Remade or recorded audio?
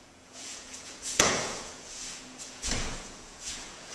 remade